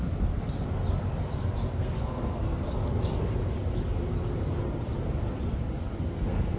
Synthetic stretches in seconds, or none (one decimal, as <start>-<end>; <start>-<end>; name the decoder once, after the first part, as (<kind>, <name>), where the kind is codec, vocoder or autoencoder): 1.8-2.6 (codec, SNAC); 6.0-6.6